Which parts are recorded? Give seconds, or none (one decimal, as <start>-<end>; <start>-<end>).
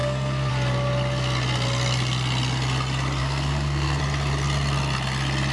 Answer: 0.5-3.2; 4.0-5.5